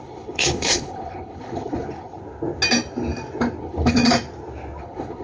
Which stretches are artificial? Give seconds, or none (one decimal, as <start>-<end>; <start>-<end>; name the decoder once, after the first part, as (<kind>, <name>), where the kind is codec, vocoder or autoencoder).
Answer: 0.0-2.2 (codec, HILCodec); 3.6-4.0; 4.8-5.2